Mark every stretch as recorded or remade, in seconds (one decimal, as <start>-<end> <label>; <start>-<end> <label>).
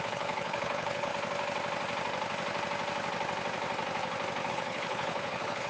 0.0-1.1 remade; 1.1-4.5 recorded; 4.5-5.7 remade